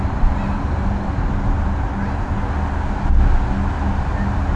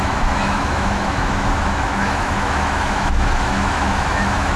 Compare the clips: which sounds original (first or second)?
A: first